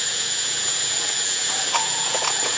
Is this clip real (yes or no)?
no